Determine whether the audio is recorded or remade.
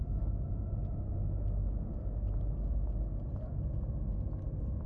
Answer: recorded